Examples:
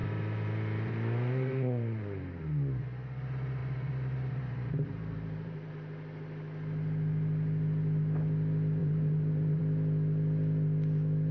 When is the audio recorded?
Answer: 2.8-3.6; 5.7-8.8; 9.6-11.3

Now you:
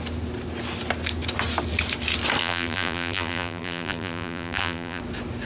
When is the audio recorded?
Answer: 0.0-2.4; 5.0-5.5